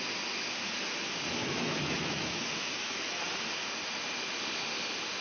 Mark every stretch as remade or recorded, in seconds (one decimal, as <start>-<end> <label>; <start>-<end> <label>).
0.0-1.4 recorded; 1.4-3.2 remade; 3.2-5.2 recorded